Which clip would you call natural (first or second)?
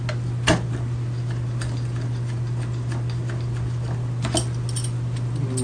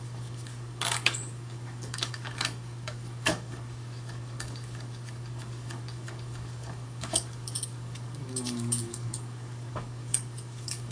first